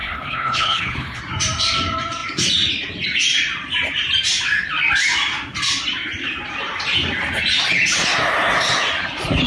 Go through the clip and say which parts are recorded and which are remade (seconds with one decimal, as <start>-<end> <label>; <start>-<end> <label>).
0.0-1.2 remade; 1.2-9.5 recorded